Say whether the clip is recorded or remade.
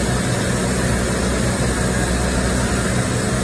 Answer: recorded